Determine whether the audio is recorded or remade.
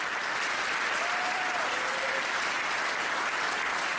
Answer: recorded